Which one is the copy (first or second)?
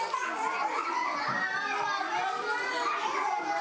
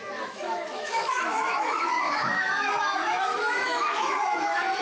second